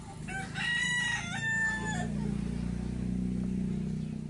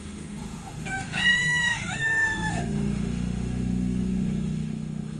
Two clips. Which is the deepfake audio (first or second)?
second